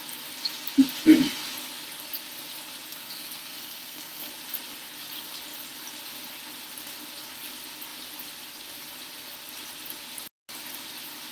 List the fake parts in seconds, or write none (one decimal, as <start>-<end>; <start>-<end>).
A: 2.9-4.3